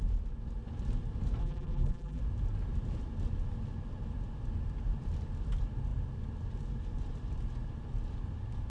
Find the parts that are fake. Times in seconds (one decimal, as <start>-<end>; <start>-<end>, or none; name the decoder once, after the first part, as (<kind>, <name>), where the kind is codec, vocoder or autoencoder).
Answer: 1.4-2.2 (vocoder, BigVGAN v2)